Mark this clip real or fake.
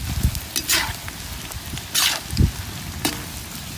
real